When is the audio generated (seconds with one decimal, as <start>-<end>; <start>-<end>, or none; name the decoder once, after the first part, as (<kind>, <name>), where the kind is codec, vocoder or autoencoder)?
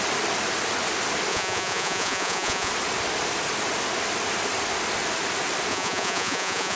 1.3-2.7 (vocoder, Vocos); 5.7-6.8